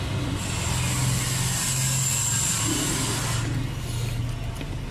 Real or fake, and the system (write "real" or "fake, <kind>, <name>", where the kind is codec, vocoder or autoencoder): real